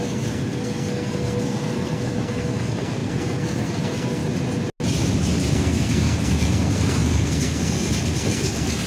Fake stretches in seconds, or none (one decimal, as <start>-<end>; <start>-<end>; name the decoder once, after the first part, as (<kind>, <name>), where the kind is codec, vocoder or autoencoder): 0.0-4.2 (codec, SNAC); 5.5-8.9